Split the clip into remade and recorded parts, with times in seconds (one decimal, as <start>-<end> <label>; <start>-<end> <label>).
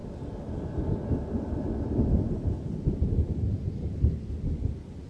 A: 0.0-5.1 recorded